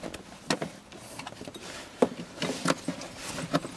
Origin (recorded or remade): recorded